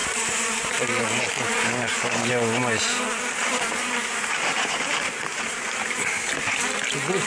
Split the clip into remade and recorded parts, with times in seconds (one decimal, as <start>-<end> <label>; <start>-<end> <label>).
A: 0.0-2.3 remade; 2.3-3.5 recorded; 3.5-6.3 remade; 6.3-7.3 recorded